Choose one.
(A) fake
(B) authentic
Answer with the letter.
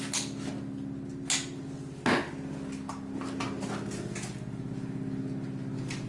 B